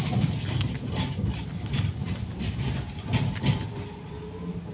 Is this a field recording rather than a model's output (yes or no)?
yes